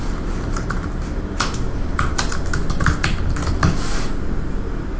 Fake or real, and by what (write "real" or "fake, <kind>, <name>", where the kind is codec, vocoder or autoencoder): real